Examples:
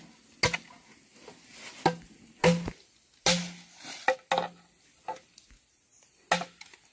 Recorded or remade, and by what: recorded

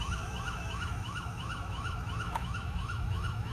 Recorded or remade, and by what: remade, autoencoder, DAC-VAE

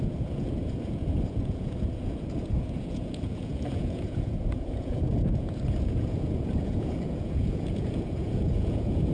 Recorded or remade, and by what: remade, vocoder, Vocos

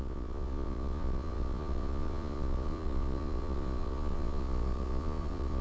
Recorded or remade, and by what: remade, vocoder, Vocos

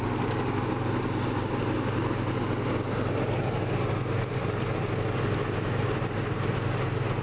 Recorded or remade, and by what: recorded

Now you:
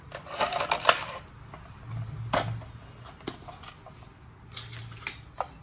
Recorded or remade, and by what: recorded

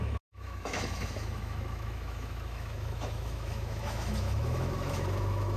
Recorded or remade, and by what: remade, autoencoder, DAC-VAE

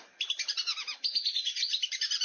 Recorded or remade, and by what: recorded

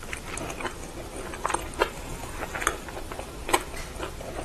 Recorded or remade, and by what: recorded